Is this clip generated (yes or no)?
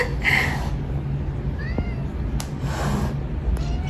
no